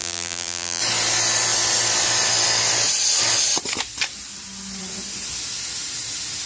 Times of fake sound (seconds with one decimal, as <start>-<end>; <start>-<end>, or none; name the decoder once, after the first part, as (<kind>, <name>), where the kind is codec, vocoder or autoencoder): 0.0-0.8 (vocoder, BigVGAN v2)